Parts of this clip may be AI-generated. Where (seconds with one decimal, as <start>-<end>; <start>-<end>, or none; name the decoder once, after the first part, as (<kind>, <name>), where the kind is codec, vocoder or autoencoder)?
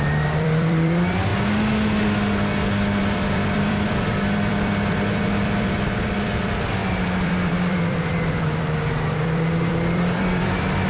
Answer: 0.0-1.3 (vocoder, BigVGAN v2); 3.0-10.9